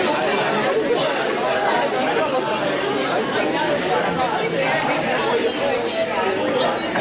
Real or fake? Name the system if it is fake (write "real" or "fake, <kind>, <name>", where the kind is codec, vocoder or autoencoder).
real